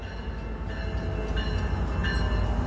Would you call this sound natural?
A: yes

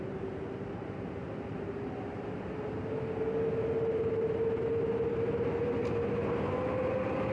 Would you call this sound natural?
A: yes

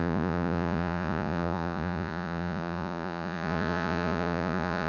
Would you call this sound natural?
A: no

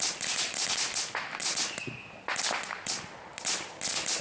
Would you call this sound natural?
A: yes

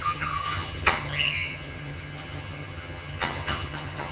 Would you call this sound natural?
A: no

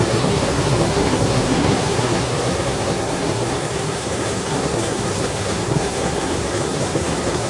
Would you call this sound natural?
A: no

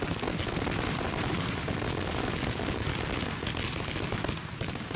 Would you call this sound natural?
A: yes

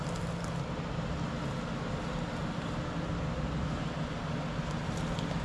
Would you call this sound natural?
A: yes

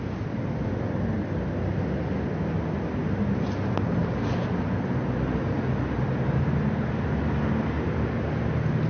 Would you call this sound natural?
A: yes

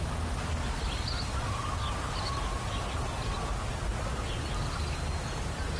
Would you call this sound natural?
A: yes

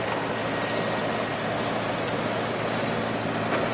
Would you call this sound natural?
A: yes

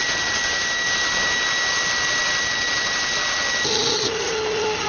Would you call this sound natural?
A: yes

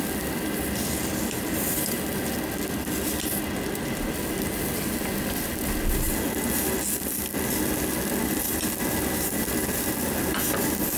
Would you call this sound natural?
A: yes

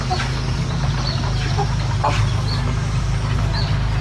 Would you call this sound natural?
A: yes